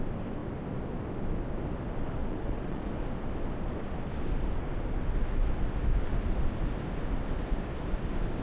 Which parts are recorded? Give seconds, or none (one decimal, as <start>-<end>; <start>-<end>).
0.0-2.2; 2.9-8.4